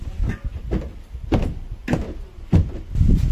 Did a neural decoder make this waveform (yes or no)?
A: no